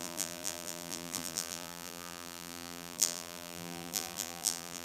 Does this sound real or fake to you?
fake